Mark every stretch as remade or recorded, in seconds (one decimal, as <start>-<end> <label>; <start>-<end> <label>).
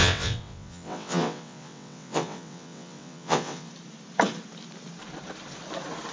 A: 0.0-3.7 remade; 3.7-6.1 recorded